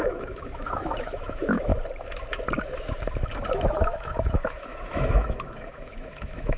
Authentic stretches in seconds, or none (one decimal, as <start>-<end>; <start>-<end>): 1.7-3.5

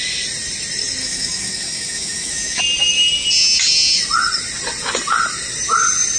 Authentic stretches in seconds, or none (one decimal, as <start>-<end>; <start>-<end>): 0.0-1.0; 2.6-6.2

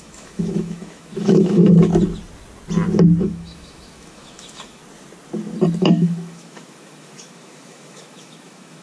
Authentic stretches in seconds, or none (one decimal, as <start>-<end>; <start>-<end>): 1.9-3.2; 4.8-5.8

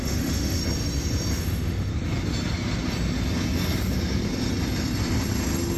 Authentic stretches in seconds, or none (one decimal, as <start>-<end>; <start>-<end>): 0.6-1.4; 1.9-5.8

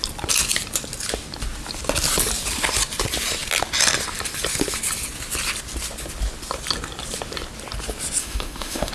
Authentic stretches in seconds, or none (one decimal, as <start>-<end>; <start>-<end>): 0.0-8.2

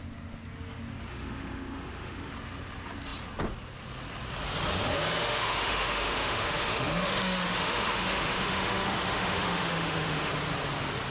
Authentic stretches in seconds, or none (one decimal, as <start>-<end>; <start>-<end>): 0.0-1.1; 2.3-5.2; 10.3-11.1

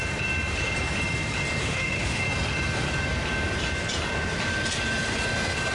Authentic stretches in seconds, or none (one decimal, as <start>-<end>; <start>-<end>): 0.0-1.6; 2.2-5.7